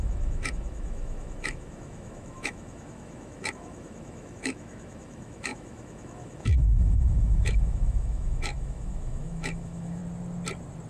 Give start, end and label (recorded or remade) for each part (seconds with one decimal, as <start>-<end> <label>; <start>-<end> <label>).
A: 0.0-10.0 remade; 10.0-10.9 recorded